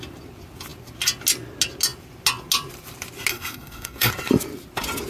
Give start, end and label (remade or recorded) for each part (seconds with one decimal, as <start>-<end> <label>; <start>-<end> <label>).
0.0-3.3 recorded; 3.3-4.1 remade; 4.1-5.1 recorded